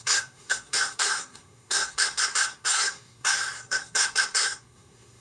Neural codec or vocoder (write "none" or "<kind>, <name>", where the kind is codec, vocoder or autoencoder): codec, SNAC